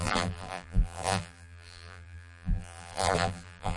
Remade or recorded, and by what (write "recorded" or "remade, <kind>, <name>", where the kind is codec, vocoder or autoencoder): remade, vocoder, BigVGAN v2